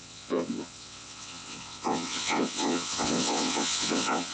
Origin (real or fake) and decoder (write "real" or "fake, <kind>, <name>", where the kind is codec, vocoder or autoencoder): fake, vocoder, WaveNeXt